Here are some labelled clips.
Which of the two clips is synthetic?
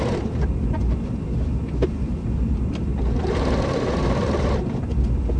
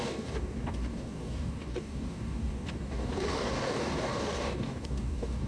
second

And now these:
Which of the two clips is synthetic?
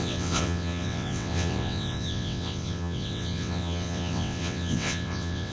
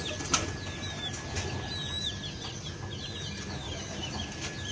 first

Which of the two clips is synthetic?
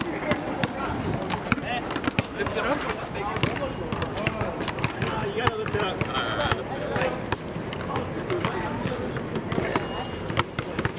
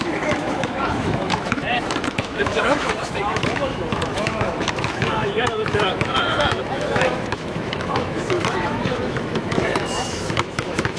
second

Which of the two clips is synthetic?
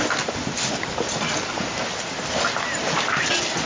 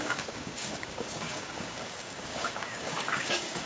second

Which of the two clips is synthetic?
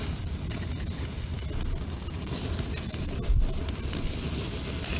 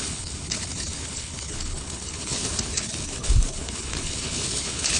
second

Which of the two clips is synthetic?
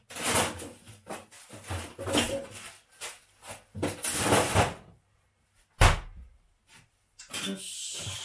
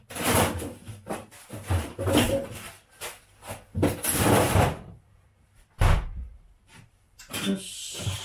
second